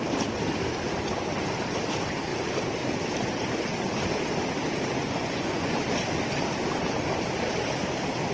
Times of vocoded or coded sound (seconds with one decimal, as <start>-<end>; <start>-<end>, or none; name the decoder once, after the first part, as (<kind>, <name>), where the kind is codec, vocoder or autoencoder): 5.0-5.8 (vocoder, Vocos)

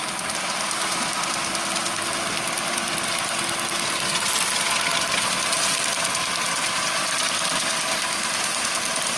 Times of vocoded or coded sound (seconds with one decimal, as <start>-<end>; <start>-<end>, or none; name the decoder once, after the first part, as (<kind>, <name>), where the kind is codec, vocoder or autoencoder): none

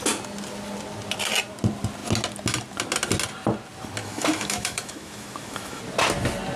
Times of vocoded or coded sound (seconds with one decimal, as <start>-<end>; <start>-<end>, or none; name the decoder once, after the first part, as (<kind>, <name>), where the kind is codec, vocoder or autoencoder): 4.0-5.8 (autoencoder, DAC-VAE)

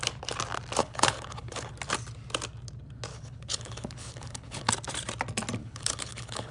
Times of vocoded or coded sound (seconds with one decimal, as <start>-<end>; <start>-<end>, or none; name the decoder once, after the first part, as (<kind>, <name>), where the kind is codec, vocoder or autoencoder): 0.8-1.7 (codec, HILCodec); 3.1-4.7; 5.6-6.5

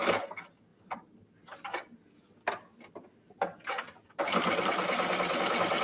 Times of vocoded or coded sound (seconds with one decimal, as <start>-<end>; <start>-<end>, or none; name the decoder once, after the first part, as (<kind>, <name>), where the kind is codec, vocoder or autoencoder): none